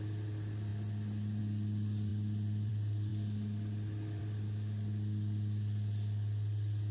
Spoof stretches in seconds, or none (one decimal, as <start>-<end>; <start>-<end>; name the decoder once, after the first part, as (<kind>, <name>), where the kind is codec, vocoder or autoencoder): none